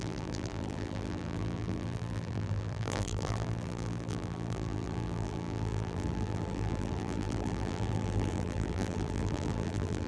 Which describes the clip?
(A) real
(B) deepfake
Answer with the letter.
B